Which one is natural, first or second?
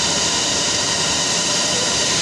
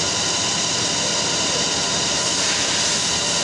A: second